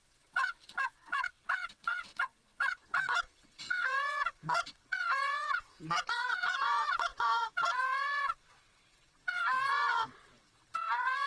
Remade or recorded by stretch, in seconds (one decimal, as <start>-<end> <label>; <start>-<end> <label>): 0.0-11.3 remade